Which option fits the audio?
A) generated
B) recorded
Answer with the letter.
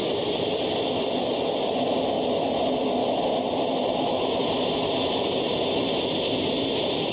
B